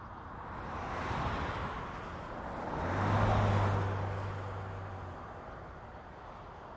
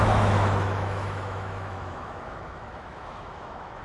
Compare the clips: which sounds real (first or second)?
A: first